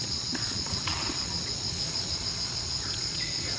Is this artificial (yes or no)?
yes